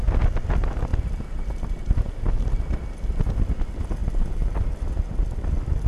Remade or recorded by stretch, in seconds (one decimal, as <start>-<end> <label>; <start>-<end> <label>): 0.0-5.9 recorded